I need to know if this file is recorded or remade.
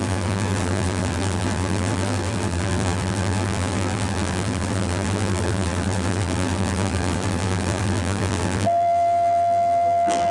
remade